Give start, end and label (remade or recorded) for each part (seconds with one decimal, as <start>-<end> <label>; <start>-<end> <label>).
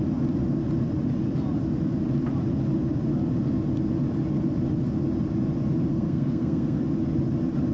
0.0-5.9 recorded; 5.9-6.8 remade; 6.8-7.7 recorded